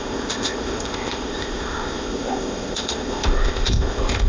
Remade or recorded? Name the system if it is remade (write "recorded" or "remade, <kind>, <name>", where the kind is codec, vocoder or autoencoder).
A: remade, codec, ZipCodec